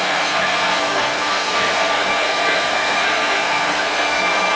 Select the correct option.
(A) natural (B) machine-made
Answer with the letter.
B